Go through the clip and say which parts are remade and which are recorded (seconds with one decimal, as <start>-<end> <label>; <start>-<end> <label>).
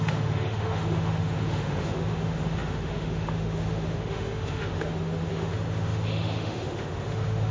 0.0-7.5 remade